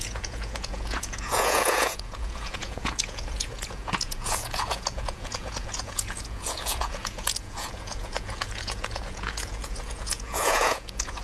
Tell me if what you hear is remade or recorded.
remade